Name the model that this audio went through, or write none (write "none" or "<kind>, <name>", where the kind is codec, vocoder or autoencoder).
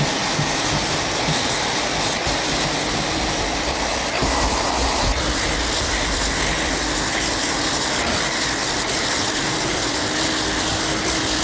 none